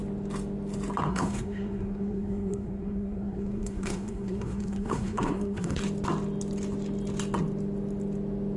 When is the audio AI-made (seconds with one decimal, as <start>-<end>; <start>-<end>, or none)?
1.1-5.8